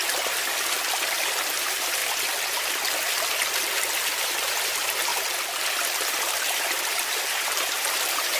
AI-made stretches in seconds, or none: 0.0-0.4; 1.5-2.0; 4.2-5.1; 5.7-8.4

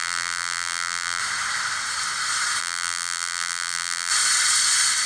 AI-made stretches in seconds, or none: 0.0-1.2; 2.6-4.1

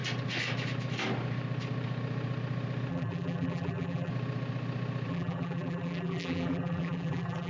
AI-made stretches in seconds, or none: 2.9-4.1; 5.1-7.5

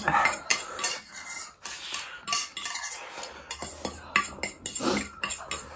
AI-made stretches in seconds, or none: none

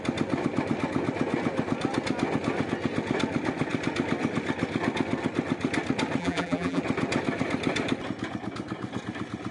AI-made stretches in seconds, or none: 6.2-6.8

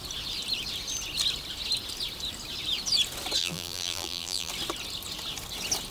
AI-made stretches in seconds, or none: 3.4-4.5